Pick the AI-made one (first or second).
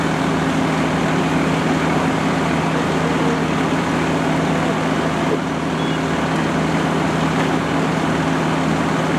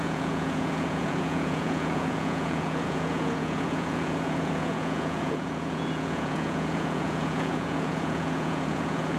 second